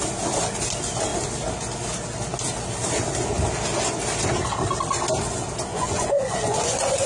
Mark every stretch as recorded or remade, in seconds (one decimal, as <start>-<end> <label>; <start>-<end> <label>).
0.0-5.7 recorded; 5.7-7.1 remade